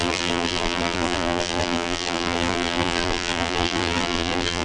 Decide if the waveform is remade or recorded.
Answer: remade